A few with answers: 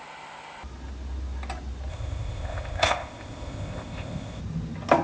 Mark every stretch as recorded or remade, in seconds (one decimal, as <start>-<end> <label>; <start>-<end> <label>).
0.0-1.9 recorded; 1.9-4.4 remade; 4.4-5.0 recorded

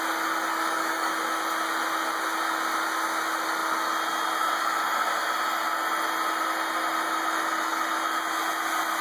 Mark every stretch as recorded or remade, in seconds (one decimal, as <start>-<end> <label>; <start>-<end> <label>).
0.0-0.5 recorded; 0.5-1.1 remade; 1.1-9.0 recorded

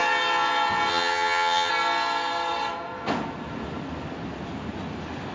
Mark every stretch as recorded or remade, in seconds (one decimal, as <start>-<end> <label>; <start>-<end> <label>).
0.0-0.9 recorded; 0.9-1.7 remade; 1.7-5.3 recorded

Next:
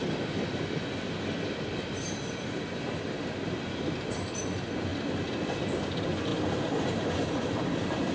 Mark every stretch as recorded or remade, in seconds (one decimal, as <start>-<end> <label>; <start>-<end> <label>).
0.0-6.3 remade; 6.3-7.3 recorded; 7.3-8.1 remade

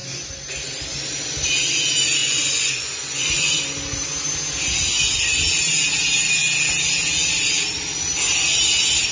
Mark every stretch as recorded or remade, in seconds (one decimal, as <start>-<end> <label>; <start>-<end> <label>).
0.0-2.2 recorded; 2.2-3.6 remade; 3.6-9.1 recorded